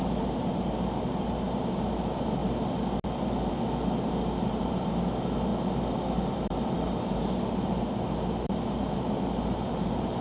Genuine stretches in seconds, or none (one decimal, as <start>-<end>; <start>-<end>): 2.4-4.5; 5.5-6.3